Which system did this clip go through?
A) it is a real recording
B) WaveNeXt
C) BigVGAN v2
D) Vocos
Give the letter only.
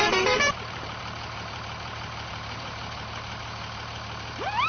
C